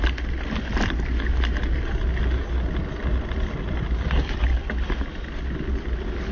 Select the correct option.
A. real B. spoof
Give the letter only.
A